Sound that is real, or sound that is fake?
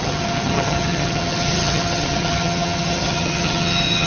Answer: fake